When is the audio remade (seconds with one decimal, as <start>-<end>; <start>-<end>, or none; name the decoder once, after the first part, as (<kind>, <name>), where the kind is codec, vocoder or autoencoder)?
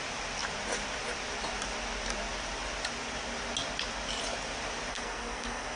4.9-5.8 (codec, SNAC)